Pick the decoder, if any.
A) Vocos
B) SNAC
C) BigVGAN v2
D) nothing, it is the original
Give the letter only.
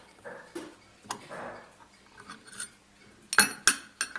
D